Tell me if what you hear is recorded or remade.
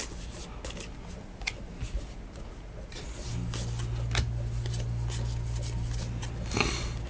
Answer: recorded